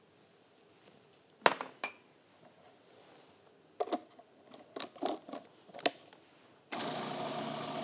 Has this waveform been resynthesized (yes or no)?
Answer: no